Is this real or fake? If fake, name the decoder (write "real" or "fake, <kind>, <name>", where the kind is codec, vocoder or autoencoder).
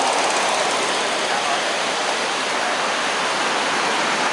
real